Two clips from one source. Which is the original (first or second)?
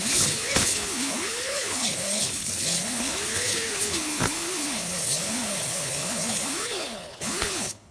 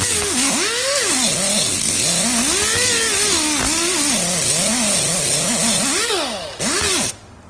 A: second